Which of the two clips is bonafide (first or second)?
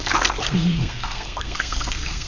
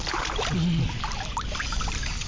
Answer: second